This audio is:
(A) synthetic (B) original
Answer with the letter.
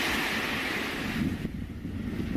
B